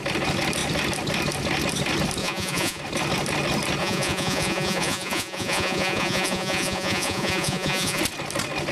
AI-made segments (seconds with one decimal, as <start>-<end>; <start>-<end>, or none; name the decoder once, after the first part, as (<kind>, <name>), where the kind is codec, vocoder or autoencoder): 2.2-2.8 (vocoder, Vocos); 3.8-8.0